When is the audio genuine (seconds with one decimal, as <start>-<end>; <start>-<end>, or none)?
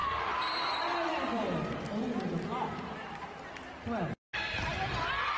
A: 3.2-4.7